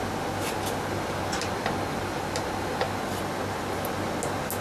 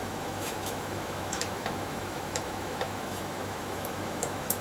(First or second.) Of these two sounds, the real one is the first